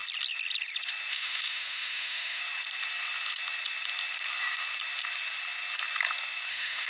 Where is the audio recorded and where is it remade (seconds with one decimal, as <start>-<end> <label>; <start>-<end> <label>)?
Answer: 0.0-1.1 recorded; 1.1-2.4 remade; 2.4-6.5 recorded; 6.5-6.9 remade